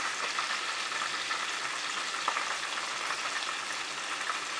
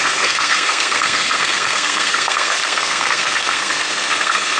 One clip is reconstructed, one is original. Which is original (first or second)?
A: first